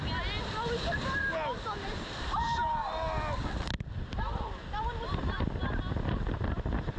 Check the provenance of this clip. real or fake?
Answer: real